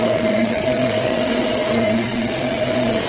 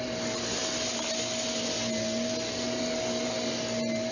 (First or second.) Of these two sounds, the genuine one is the second